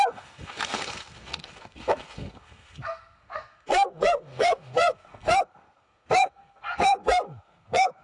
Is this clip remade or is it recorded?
remade